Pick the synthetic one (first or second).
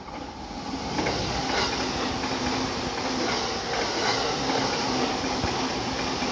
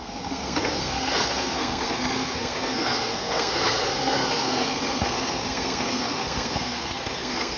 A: second